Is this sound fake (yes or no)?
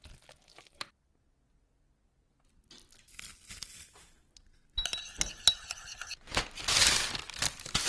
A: no